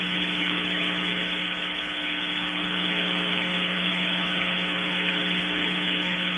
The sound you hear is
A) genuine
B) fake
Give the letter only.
B